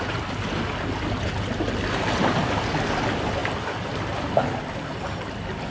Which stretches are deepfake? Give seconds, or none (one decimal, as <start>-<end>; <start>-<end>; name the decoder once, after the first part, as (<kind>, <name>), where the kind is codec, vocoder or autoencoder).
none